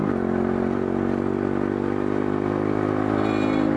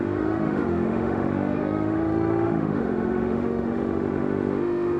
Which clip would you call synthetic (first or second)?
second